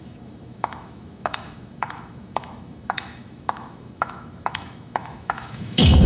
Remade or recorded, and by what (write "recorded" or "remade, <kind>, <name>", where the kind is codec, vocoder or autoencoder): remade, autoencoder, DAC-VAE